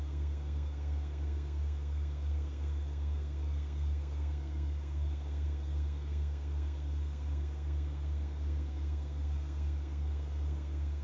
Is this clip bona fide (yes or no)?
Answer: no